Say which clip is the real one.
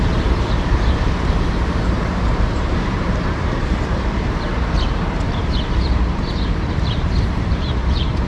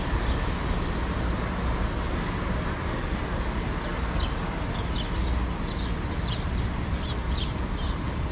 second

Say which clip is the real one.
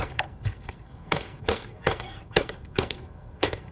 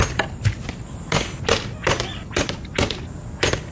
second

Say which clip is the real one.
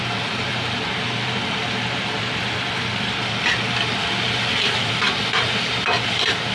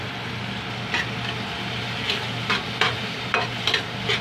second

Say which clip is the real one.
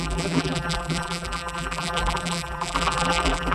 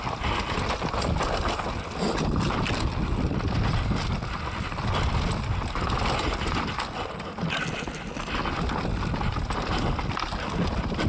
second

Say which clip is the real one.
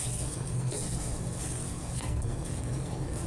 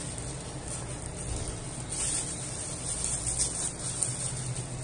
second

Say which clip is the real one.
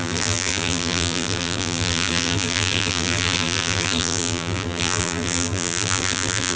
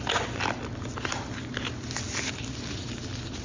second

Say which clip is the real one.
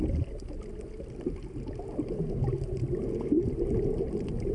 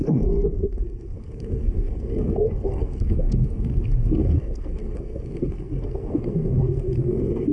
first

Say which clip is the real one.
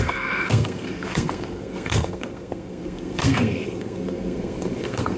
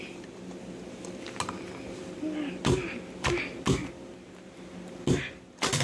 second